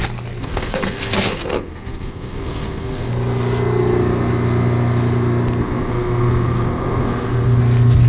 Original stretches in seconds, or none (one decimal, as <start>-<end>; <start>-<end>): 0.0-0.4; 3.1-5.6; 7.6-8.1

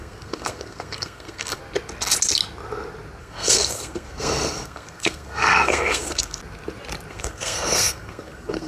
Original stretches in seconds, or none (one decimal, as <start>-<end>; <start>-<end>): 1.6-3.2; 6.4-7.1

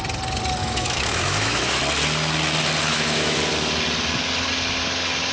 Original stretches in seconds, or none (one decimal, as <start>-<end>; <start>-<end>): 0.0-0.6; 1.8-2.9; 3.4-5.3